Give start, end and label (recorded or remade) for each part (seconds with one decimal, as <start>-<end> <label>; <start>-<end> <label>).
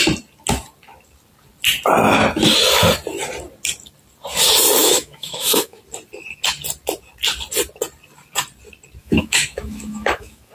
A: 0.0-4.8 recorded; 4.8-5.8 remade; 5.8-9.0 recorded; 9.0-10.5 remade